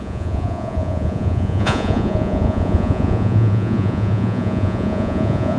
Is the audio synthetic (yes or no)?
yes